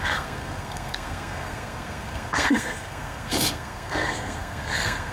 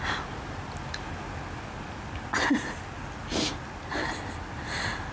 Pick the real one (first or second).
second